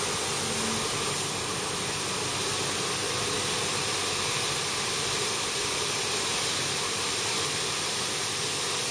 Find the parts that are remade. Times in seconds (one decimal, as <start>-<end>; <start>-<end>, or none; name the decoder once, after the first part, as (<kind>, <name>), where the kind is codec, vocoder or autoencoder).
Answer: none